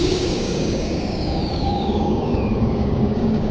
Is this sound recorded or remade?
remade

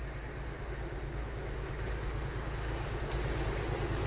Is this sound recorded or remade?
recorded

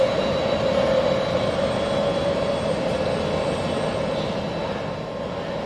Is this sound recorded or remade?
recorded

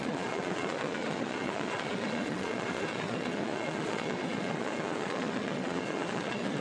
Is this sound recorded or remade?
remade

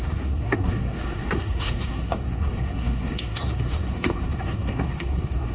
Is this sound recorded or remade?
remade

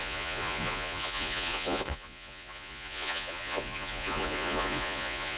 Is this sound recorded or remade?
remade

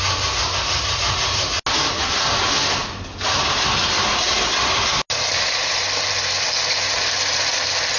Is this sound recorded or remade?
recorded